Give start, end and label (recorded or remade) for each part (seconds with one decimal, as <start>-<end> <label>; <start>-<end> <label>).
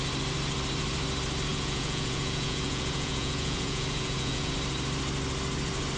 0.0-1.5 recorded; 1.5-4.5 remade; 4.5-6.0 recorded